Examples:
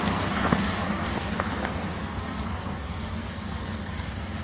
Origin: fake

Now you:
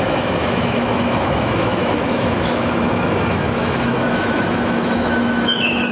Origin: fake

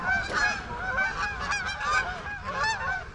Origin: real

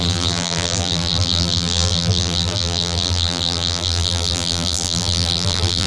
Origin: fake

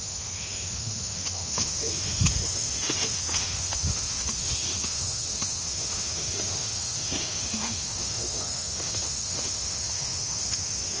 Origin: fake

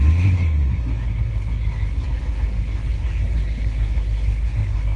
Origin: fake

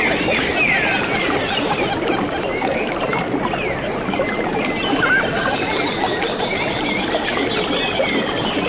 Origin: real